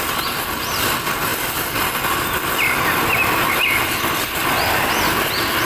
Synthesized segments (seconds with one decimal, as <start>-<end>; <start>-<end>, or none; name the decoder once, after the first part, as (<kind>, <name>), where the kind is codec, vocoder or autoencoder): none